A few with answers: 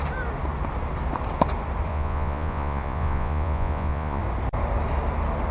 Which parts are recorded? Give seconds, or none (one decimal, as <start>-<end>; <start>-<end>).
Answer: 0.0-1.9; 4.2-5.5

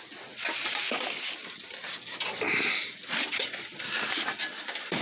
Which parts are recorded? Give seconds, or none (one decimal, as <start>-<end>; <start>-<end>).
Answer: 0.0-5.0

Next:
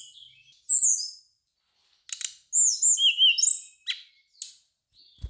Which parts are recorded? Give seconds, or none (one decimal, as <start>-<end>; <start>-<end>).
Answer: 0.0-5.3

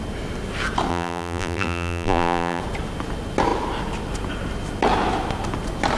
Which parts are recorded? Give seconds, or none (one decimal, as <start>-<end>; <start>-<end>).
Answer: 0.0-0.9; 2.6-6.0

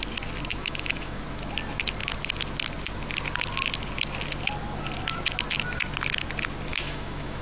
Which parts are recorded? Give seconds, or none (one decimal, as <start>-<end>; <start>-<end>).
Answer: 0.0-0.5; 1.2-6.7

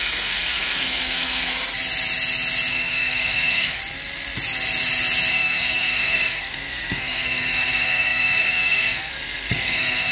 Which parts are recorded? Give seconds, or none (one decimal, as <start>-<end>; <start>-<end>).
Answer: 1.5-2.7; 3.8-5.3